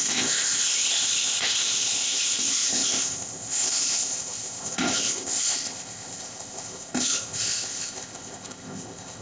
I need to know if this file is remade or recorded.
remade